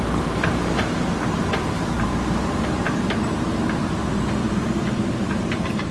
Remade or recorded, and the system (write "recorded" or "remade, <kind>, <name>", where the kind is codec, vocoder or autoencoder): remade, vocoder, BigVGAN v2